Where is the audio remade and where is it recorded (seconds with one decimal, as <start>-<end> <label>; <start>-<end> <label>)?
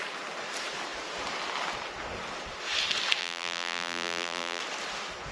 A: 0.0-3.2 recorded; 3.2-4.6 remade; 4.6-5.3 recorded